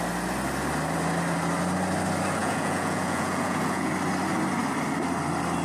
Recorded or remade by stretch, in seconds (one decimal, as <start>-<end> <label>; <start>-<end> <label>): 0.0-2.4 recorded; 2.4-3.9 remade; 3.9-5.6 recorded